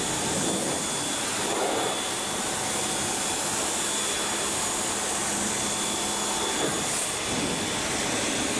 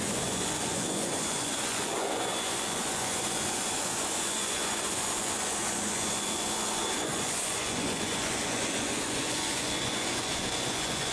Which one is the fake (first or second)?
second